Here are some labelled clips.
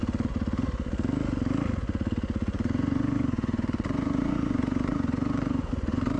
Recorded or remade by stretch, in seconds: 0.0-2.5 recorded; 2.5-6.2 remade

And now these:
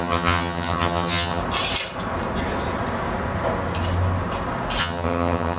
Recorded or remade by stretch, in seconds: 0.0-1.4 remade; 1.4-4.8 recorded; 4.8-5.6 remade

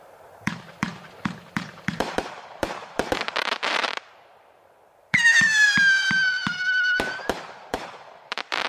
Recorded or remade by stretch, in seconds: 0.0-8.7 remade

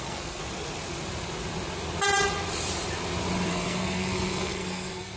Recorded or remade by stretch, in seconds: 0.0-0.4 remade; 0.4-3.5 recorded; 3.5-5.2 remade